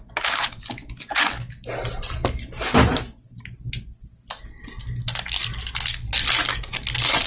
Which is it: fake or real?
real